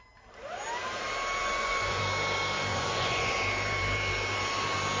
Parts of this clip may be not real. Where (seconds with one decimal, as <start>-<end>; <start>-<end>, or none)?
1.4-2.0; 2.7-3.4